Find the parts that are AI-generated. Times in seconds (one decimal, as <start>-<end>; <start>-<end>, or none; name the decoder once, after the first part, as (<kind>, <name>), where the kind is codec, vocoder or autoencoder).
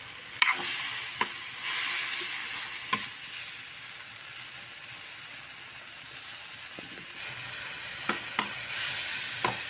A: none